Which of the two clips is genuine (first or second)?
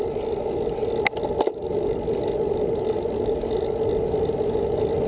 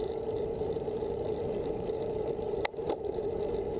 first